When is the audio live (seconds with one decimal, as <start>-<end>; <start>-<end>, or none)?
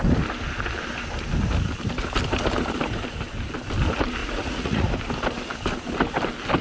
0.0-4.2; 4.9-6.6